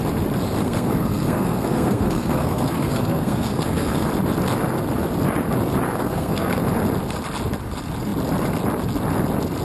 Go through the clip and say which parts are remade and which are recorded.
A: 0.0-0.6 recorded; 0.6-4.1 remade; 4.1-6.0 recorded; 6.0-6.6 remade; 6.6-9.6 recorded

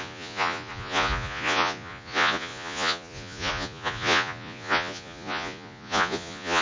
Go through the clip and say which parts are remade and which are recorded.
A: 0.0-6.6 remade

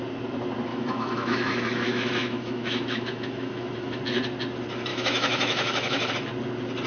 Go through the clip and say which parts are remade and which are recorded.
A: 0.0-0.7 recorded; 0.7-4.0 remade; 4.0-4.9 recorded; 4.9-6.1 remade; 6.1-6.9 recorded

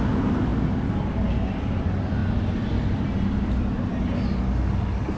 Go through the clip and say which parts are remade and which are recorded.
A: 0.0-5.2 recorded

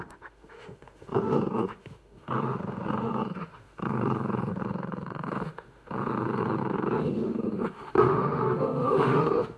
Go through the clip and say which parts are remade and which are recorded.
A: 0.0-9.6 remade

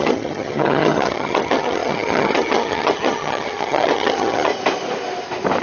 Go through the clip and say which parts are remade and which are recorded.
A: 0.0-4.5 remade; 4.5-5.6 recorded

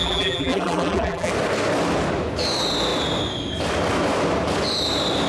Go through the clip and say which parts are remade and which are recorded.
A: 0.0-1.3 remade; 1.3-5.3 recorded

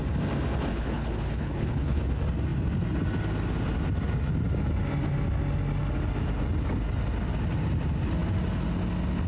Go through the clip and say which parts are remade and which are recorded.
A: 0.0-0.7 recorded; 0.7-2.0 remade; 2.0-9.3 recorded